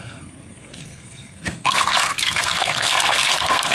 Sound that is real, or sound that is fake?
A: fake